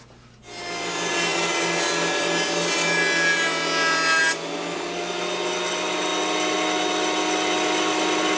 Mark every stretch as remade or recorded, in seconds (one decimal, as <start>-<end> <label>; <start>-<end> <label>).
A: 0.0-8.4 recorded